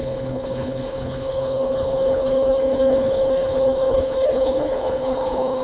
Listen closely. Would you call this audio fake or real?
fake